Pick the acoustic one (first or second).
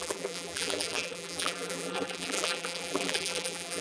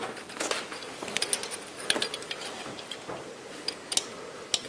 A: second